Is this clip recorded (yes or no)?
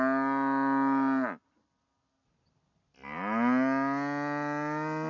yes